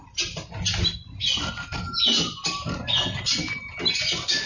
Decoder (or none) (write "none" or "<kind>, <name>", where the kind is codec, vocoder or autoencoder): none